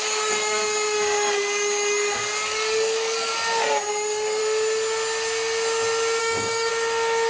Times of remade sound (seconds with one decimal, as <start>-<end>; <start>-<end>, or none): 0.0-3.3; 3.9-4.4; 6.2-6.7